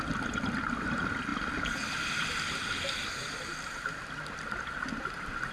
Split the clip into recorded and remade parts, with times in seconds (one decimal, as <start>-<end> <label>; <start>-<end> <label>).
0.0-5.5 recorded